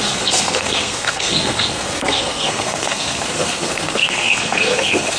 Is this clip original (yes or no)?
no